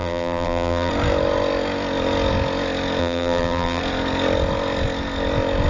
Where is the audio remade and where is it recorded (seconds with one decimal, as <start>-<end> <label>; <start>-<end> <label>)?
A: 0.0-0.9 remade; 0.9-3.0 recorded; 3.0-3.8 remade; 3.8-5.7 recorded